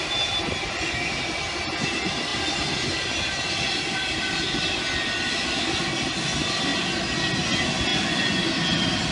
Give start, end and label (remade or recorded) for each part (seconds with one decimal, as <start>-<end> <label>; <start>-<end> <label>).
0.0-7.9 recorded; 7.9-8.4 remade; 8.4-9.1 recorded